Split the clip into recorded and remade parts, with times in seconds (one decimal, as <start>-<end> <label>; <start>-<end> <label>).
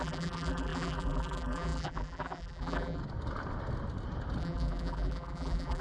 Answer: 0.0-3.0 remade; 3.0-4.4 recorded; 4.4-5.8 remade